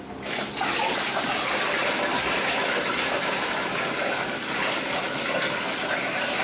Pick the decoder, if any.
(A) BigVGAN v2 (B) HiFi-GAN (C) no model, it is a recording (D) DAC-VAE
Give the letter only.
C